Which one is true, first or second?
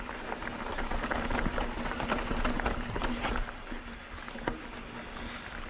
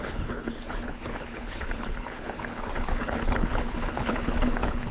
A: first